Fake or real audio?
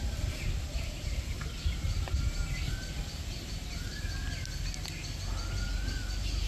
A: real